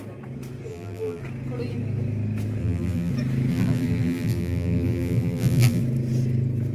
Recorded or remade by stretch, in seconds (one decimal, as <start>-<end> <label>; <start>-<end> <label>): 0.0-0.7 recorded; 0.7-1.2 remade; 1.2-2.6 recorded; 2.6-3.1 remade; 3.1-3.5 recorded; 3.5-5.8 remade; 5.8-6.7 recorded